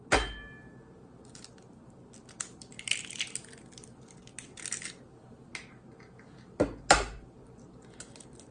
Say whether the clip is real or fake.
real